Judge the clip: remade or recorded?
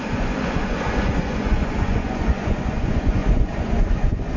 remade